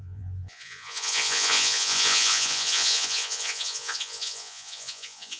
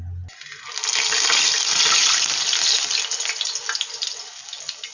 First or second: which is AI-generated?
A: first